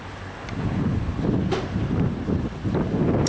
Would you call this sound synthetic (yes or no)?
no